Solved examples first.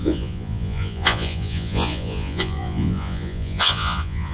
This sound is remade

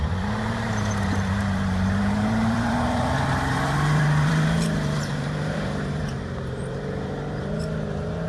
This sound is remade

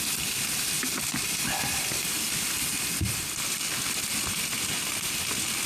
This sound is recorded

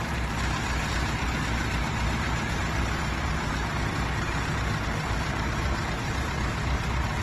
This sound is remade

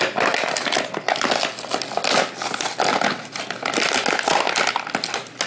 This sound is recorded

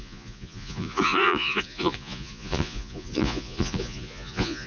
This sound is remade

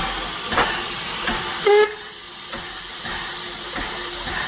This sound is recorded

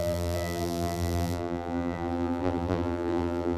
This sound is remade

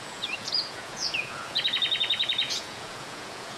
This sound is remade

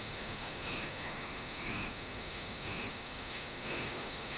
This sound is remade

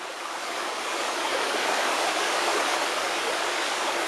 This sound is remade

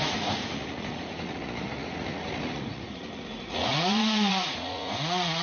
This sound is remade